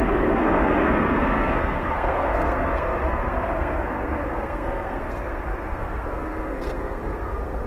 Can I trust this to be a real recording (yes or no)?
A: no